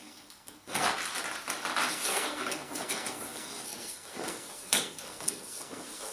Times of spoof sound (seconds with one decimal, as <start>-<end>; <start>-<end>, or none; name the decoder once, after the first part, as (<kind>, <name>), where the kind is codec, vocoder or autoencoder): 0.0-1.0 (codec, SNAC); 1.9-6.1